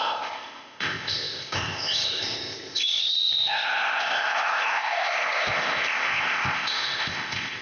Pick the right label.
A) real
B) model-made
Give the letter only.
B